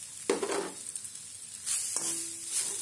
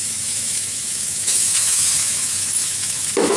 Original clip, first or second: first